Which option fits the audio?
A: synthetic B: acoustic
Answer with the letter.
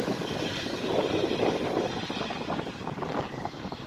A